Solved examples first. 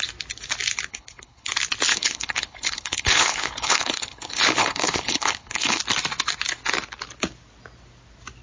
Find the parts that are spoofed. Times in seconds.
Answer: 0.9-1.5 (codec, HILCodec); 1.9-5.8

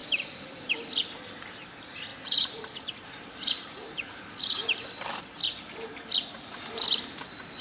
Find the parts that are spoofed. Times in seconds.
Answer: 0.0-0.7 (vocoder, BigVGAN v2); 2.1-5.2

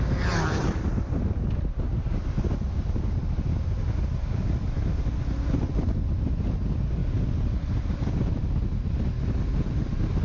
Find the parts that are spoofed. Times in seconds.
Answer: none

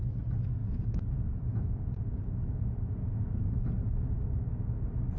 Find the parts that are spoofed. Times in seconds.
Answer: 0.6-3.7 (vocoder, Vocos)